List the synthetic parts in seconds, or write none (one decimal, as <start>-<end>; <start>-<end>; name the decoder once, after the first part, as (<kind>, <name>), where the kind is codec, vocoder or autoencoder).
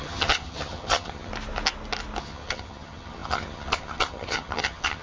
0.0-1.3 (vocoder, HiFi-GAN); 2.2-5.0